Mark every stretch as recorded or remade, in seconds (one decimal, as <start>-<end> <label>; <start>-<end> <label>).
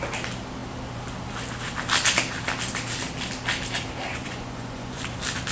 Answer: 0.0-4.1 recorded; 4.1-5.0 remade; 5.0-5.5 recorded